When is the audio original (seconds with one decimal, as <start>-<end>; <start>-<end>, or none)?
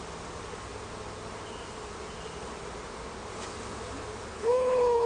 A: 0.0-4.3